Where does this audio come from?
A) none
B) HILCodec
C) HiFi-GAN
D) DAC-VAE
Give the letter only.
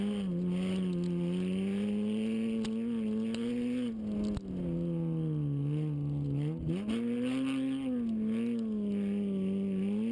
A